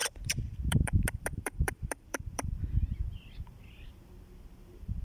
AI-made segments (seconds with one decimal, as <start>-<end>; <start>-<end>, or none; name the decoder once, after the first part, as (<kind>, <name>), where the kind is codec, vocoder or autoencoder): 0.0-2.6 (vocoder, BigVGAN v2)